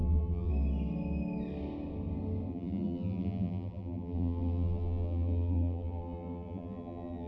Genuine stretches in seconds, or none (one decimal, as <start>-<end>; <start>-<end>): 0.5-2.5